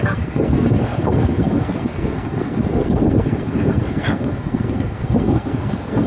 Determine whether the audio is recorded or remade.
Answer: remade